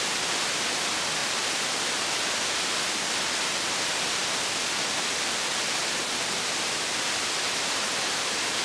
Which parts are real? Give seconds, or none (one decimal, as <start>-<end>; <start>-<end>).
0.0-8.6